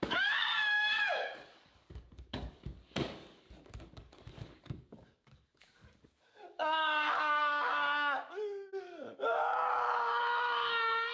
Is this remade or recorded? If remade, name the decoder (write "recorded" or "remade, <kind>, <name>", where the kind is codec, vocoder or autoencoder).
remade, codec, DAC